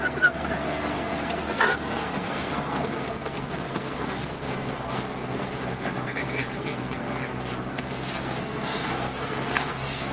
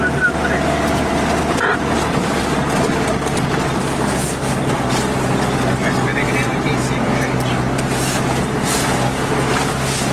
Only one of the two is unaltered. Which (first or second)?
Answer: second